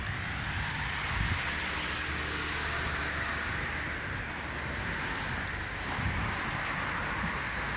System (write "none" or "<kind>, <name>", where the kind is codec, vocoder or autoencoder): none